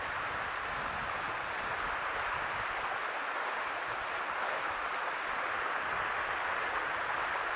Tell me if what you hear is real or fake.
real